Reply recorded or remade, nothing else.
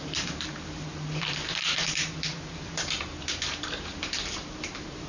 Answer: remade